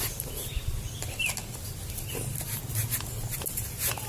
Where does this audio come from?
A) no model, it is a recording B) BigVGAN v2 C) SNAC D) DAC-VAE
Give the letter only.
A